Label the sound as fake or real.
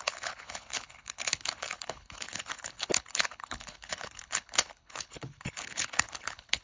fake